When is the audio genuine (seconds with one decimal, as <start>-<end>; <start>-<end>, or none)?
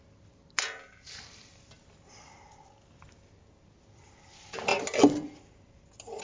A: 0.0-6.2